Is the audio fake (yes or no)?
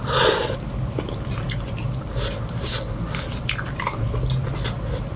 no